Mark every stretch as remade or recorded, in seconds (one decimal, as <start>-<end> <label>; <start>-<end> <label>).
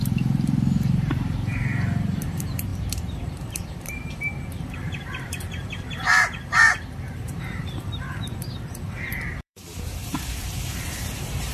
0.0-11.5 remade